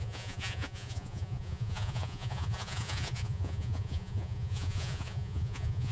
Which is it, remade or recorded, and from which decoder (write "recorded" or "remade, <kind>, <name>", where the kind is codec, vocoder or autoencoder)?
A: remade, vocoder, Vocos